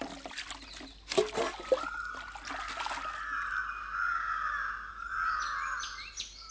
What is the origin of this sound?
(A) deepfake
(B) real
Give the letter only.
B